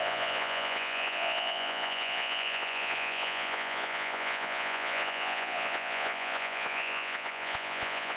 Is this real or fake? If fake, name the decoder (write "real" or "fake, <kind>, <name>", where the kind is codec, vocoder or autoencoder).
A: fake, vocoder, Vocos